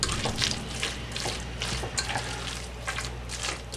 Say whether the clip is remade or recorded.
recorded